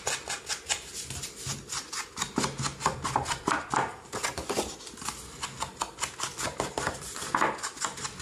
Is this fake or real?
real